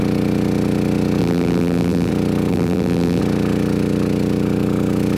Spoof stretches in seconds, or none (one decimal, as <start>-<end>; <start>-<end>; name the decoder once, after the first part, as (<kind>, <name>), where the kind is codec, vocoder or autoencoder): 1.2-2.1 (vocoder, BigVGAN v2); 2.5-3.2